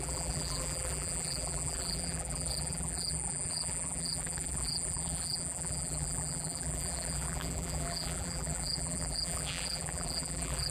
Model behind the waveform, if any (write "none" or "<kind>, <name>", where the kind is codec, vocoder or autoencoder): vocoder, BigVGAN v2